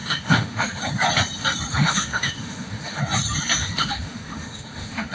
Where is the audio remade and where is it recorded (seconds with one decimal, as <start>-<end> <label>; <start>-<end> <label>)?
0.0-0.8 remade; 0.8-1.7 recorded; 1.7-3.0 remade; 3.0-3.6 recorded; 3.6-5.1 remade